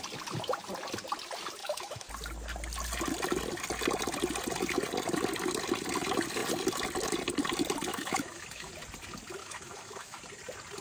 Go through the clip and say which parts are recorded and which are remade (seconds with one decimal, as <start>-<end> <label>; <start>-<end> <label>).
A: 0.0-1.6 recorded; 1.6-2.1 remade; 2.1-7.9 recorded; 7.9-8.7 remade; 8.7-9.4 recorded; 9.4-10.2 remade; 10.2-10.8 recorded